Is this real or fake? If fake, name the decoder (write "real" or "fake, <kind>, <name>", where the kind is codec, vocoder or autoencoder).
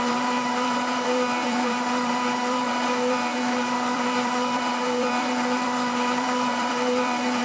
fake, vocoder, BigVGAN v2